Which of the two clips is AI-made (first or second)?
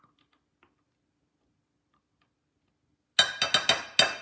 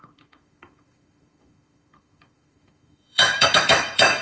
second